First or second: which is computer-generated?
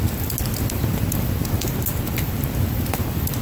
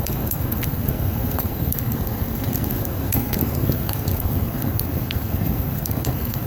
second